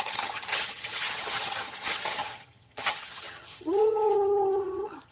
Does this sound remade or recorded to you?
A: remade